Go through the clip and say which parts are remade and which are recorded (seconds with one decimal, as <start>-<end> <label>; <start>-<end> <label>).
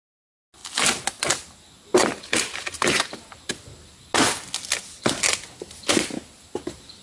0.0-2.0 recorded; 2.0-3.5 remade; 3.5-7.0 recorded